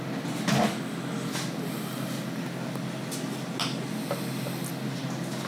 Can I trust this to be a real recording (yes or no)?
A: yes